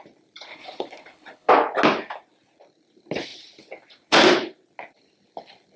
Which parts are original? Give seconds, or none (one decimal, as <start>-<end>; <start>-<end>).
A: 0.0-0.5; 1.5-5.8